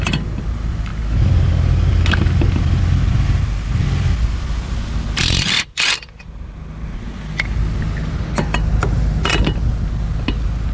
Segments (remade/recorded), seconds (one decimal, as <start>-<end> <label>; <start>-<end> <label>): 0.0-10.7 recorded